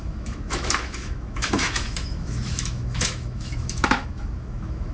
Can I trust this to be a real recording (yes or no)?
no